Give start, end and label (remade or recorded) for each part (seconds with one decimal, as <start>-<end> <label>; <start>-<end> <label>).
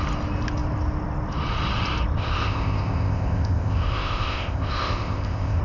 0.0-2.2 recorded; 2.2-5.6 remade